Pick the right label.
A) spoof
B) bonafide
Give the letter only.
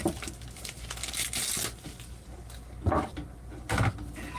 B